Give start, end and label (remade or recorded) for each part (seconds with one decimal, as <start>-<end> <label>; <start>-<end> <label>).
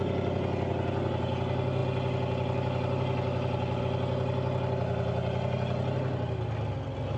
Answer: 0.0-7.2 recorded